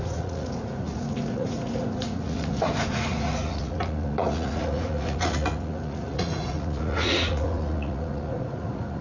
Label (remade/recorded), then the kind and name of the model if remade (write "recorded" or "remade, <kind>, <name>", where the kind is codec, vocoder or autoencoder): remade, vocoder, Vocos